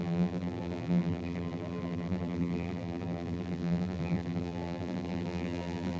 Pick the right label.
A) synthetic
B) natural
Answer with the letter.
A